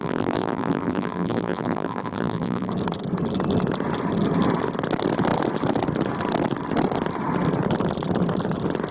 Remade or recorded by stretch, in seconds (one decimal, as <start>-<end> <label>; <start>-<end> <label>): 0.0-2.7 remade; 2.7-8.9 recorded

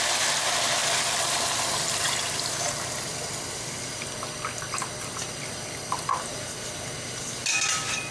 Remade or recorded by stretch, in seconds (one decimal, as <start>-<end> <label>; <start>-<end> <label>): 0.0-8.1 recorded

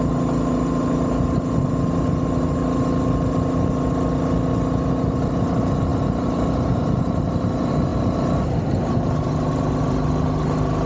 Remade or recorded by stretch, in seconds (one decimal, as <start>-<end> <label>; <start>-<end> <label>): 0.0-10.9 recorded

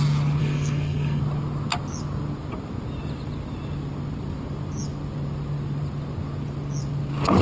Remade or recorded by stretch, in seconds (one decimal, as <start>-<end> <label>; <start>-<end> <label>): 0.0-0.4 recorded; 0.4-1.2 remade; 1.2-7.4 recorded

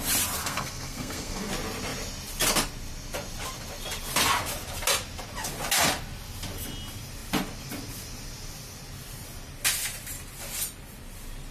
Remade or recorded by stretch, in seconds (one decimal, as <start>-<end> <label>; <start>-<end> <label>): 0.0-0.4 recorded; 0.4-1.5 remade; 1.5-11.5 recorded

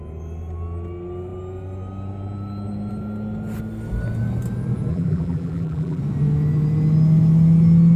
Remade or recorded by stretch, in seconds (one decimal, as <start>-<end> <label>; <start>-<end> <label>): 0.0-4.9 recorded; 4.9-6.0 remade; 6.0-8.0 recorded

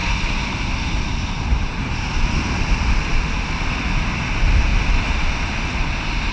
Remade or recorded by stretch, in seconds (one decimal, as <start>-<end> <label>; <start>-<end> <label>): 0.0-6.3 recorded